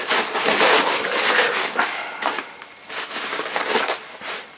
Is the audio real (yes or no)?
yes